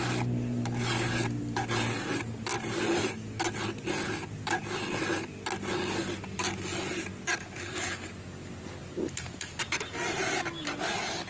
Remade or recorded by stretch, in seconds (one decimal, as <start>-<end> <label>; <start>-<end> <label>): 0.0-2.5 recorded; 2.5-3.6 remade; 3.6-11.3 recorded